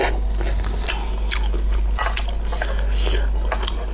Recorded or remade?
recorded